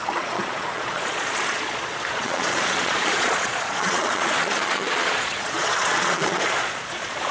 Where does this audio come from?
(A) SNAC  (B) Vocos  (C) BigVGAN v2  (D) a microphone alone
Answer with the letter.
B